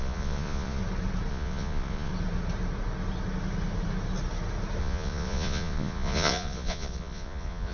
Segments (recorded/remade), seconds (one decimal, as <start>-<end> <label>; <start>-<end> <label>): 0.0-0.8 remade; 0.8-1.3 recorded; 1.3-2.1 remade; 2.1-4.8 recorded; 4.8-7.7 remade